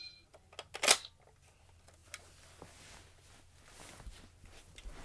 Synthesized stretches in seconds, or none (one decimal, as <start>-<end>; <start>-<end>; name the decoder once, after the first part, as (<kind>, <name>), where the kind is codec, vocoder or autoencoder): none